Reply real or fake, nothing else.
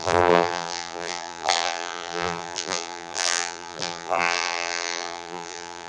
fake